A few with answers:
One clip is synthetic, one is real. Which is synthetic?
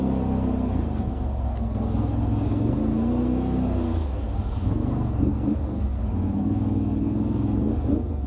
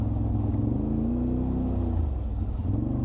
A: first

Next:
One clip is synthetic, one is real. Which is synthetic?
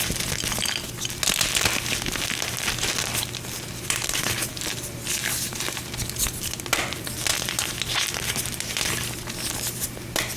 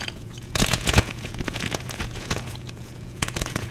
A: second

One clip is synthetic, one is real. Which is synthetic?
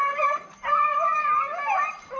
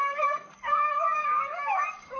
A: second